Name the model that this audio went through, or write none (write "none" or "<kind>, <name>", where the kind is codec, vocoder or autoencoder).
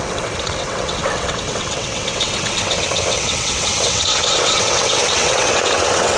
vocoder, WaveNeXt